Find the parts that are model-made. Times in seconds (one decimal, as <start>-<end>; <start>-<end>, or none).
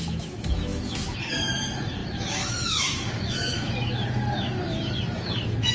0.0-5.7